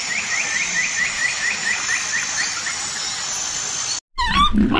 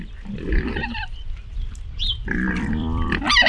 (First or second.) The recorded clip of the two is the first